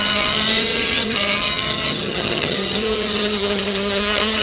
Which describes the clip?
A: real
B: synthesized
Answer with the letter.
B